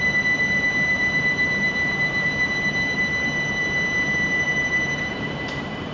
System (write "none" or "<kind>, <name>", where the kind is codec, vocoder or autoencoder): vocoder, BigVGAN v2